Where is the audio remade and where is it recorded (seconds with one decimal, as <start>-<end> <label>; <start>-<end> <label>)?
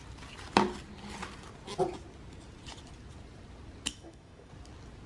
0.0-3.9 recorded; 3.9-4.5 remade; 4.5-5.1 recorded